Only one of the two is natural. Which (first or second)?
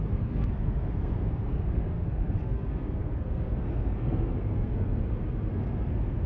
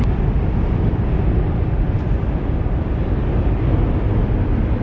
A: second